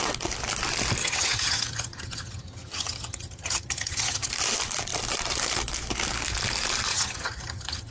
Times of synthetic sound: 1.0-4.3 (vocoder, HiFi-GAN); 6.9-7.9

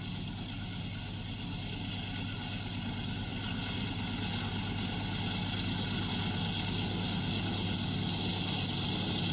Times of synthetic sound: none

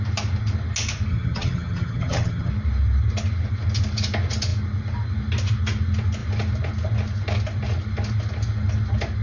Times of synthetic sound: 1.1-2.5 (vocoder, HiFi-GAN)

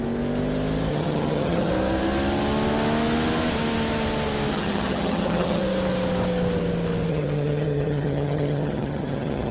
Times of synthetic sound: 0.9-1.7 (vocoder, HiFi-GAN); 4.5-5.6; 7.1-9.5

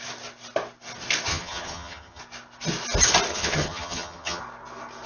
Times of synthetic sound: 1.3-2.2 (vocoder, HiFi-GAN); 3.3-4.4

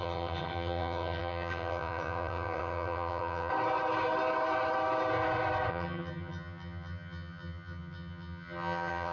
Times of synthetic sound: 0.0-3.5 (vocoder, HiFi-GAN); 5.7-9.1

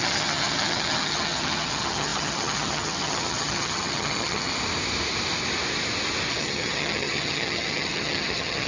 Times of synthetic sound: 0.0-4.5 (vocoder, HiFi-GAN); 6.3-8.7

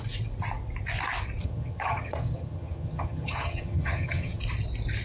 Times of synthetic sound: 1.4-4.4 (vocoder, HiFi-GAN)